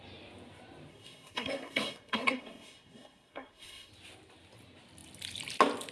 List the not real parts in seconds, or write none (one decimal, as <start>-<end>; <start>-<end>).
0.9-3.9